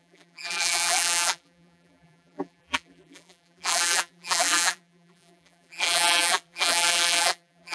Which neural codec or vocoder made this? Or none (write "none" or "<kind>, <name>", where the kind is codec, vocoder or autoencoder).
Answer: vocoder, BigVGAN v2